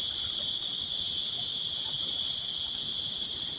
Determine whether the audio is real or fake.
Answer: real